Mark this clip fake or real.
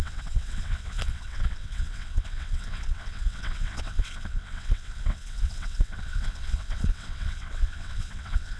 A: fake